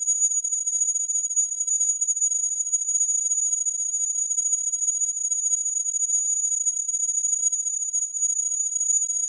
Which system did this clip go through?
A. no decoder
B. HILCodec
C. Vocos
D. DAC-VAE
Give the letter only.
B